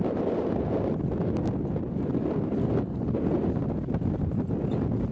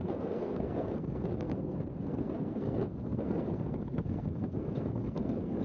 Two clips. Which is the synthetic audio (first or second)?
second